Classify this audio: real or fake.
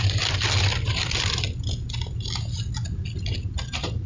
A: real